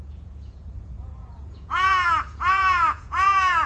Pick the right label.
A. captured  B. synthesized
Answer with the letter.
B